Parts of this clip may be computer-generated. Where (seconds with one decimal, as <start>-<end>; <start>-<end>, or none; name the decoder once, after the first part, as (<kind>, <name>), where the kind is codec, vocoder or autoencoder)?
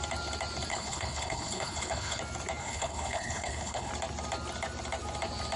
0.7-2.2 (codec, HILCodec); 2.6-3.9